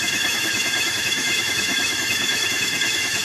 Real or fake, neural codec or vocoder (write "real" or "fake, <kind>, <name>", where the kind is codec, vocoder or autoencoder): fake, autoencoder, DAC-VAE